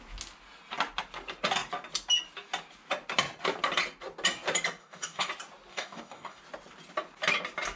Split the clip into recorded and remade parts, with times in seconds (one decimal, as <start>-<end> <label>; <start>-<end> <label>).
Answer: 0.0-4.8 recorded; 4.8-5.3 remade; 5.3-5.7 recorded; 5.7-6.4 remade; 6.4-7.8 recorded